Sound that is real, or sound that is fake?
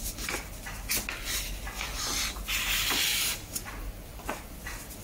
real